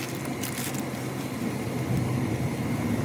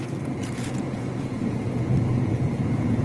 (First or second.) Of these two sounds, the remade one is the second